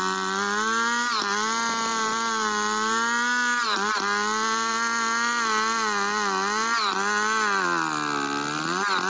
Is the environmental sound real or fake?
real